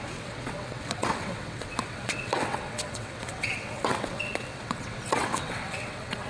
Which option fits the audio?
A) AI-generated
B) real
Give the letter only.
A